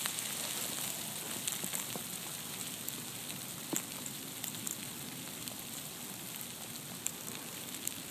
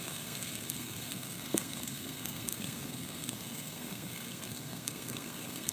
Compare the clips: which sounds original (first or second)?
first